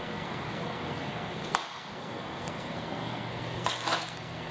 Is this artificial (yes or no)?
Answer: yes